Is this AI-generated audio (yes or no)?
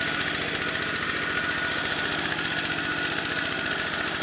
no